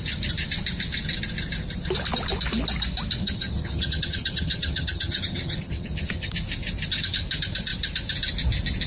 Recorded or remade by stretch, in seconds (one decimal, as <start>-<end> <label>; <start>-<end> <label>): 0.0-3.2 recorded; 3.2-6.3 remade; 6.3-8.9 recorded